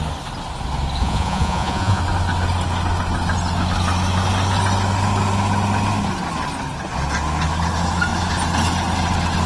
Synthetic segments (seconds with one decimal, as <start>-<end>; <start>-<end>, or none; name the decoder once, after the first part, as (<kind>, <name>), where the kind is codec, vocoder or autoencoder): 1.0-2.0 (vocoder, Vocos)